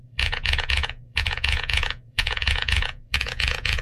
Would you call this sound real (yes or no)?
no